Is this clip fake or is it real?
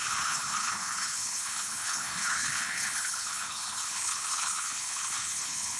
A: fake